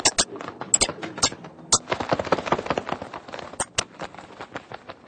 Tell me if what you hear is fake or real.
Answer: real